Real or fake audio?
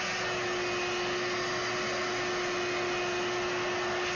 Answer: real